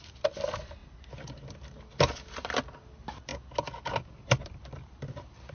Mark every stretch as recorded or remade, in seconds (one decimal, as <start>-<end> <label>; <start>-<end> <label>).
0.0-5.5 recorded